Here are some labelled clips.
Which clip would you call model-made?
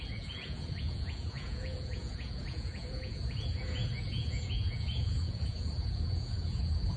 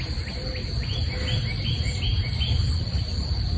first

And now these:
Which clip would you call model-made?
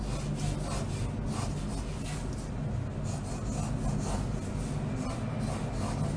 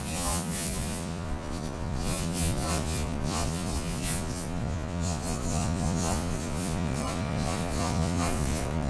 second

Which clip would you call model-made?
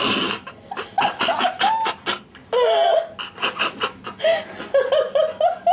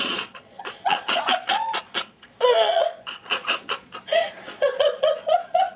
second